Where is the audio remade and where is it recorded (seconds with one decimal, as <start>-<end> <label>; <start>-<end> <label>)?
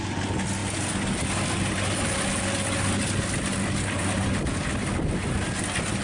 0.0-6.0 recorded